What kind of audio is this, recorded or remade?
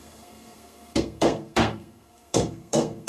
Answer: remade